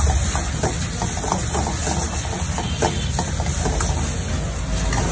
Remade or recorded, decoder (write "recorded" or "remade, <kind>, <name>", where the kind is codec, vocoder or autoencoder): recorded